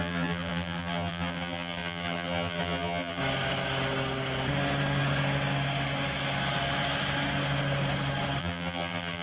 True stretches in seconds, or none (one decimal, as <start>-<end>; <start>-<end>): 3.2-8.4